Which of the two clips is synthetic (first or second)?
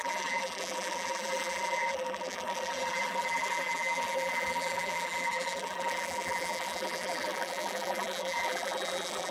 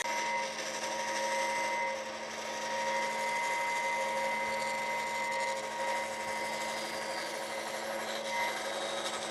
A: first